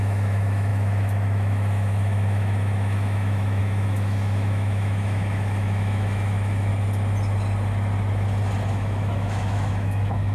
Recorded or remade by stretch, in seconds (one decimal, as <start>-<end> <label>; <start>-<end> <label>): 0.0-6.7 remade; 6.7-8.7 recorded; 8.7-10.3 remade